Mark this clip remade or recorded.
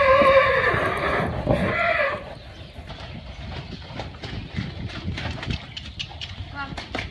recorded